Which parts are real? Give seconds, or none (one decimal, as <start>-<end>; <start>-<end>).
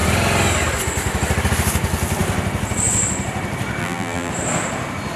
0.0-3.8; 4.3-5.2